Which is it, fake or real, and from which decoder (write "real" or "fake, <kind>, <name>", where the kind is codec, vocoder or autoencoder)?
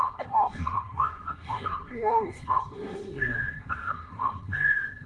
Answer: fake, codec, SNAC